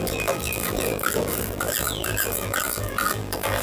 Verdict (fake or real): fake